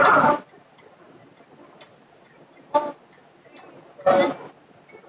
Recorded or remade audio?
recorded